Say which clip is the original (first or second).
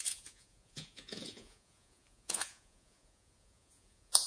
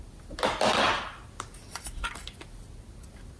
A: second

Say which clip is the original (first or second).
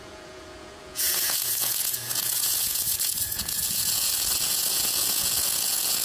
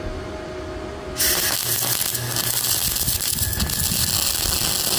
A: second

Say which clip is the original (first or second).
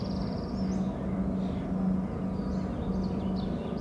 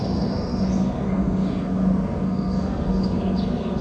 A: first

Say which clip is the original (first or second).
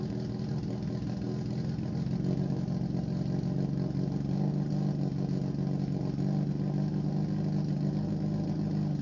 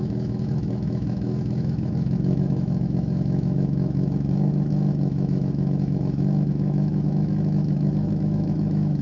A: first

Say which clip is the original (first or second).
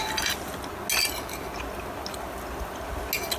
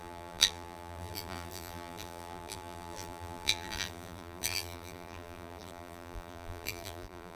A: first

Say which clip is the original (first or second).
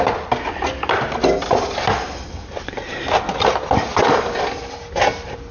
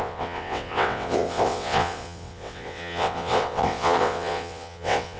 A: first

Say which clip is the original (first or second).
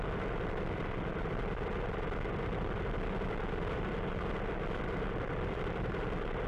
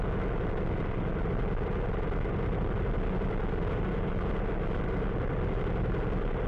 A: second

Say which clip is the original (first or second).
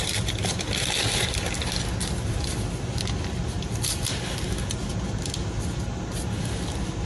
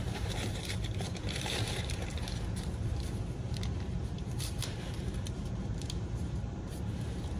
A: first